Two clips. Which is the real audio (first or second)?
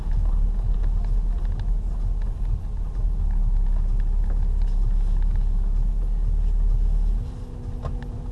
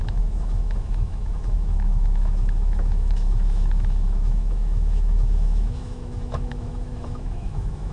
first